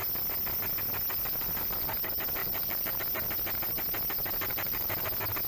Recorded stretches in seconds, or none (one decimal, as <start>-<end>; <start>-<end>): 0.0-2.4; 3.0-4.5; 5.0-5.5